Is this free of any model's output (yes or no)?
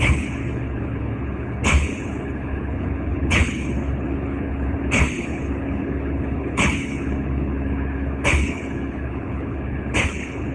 no